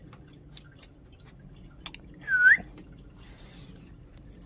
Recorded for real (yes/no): yes